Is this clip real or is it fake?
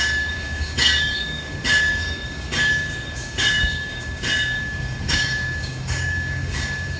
fake